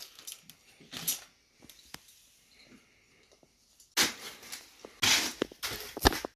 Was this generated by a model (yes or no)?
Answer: no